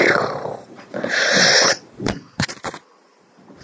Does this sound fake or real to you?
fake